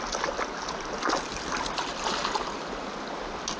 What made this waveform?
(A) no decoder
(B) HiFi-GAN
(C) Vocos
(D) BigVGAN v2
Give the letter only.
A